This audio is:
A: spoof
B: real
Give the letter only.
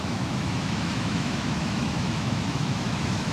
A